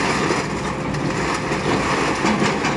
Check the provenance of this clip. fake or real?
real